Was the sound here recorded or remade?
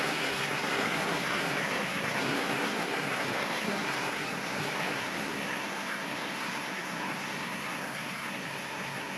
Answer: remade